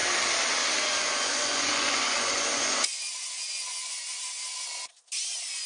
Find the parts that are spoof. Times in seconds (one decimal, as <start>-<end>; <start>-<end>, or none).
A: 0.8-4.4